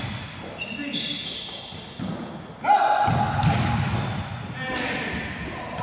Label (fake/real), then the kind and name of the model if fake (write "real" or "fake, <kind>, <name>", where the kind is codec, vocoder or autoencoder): real